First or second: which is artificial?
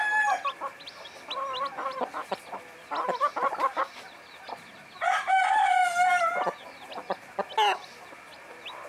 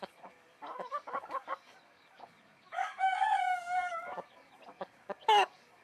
second